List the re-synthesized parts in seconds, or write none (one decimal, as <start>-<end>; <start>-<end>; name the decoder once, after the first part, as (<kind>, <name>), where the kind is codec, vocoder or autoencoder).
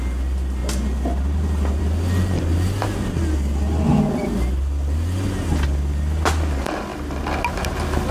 none